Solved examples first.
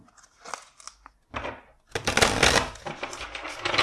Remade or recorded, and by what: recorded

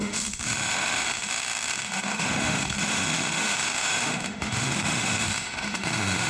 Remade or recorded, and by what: remade, autoencoder, DAC-VAE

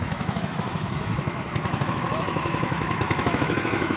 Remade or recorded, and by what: remade, autoencoder, DAC-VAE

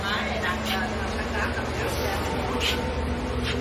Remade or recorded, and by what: recorded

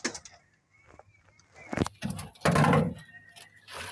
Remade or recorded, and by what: recorded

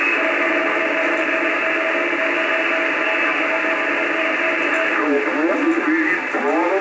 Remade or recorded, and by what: recorded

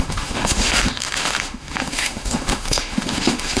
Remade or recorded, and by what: remade, autoencoder, DAC-VAE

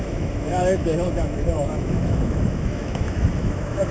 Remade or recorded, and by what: remade, autoencoder, DAC-VAE